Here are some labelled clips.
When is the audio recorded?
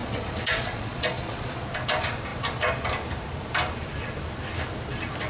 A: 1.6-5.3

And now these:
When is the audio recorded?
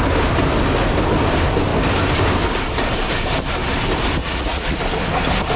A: 0.0-4.2; 4.8-5.6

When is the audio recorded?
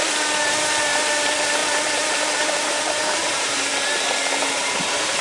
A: 3.7-4.4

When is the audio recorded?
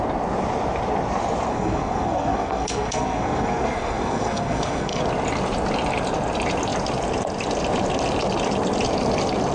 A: 0.0-1.5; 5.0-9.5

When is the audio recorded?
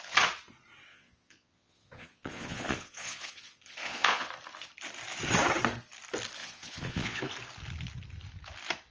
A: 0.0-0.9; 4.3-6.4; 7.2-8.9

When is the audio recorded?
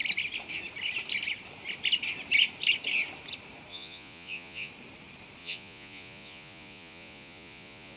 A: 0.0-3.7; 4.7-5.4